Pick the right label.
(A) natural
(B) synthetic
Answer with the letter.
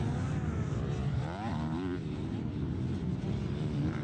A